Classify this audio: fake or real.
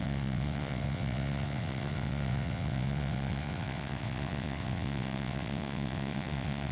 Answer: fake